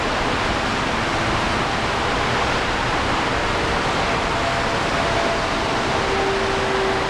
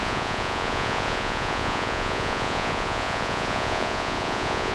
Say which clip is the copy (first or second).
second